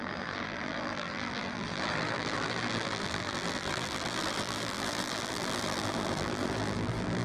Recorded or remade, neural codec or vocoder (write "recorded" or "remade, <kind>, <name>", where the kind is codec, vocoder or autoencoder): remade, vocoder, BigVGAN v2